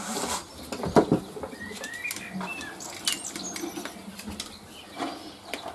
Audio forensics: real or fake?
real